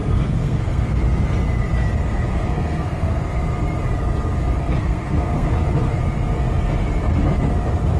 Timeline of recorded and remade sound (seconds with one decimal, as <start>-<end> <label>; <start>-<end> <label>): 0.0-1.0 remade; 1.0-2.0 recorded; 2.0-3.4 remade; 3.4-4.6 recorded; 4.6-6.0 remade; 6.0-8.0 recorded